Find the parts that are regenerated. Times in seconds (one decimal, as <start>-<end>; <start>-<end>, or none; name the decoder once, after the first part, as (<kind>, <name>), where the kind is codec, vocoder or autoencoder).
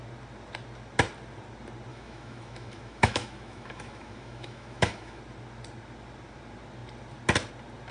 1.9-5.2 (autoencoder, DAC-VAE)